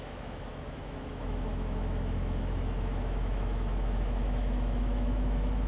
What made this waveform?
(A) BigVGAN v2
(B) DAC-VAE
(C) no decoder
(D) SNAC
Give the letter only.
B